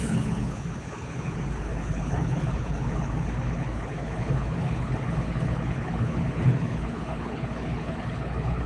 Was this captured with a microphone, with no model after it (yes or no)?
no